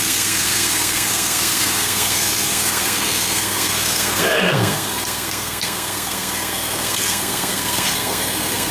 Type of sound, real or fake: fake